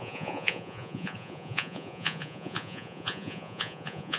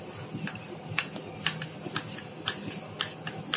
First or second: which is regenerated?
first